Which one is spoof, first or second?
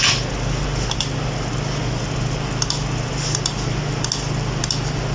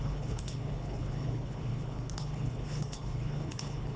second